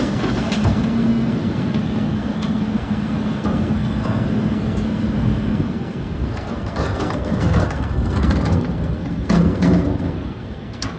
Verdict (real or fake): fake